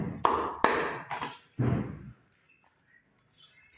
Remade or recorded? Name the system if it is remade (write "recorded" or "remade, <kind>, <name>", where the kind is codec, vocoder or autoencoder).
recorded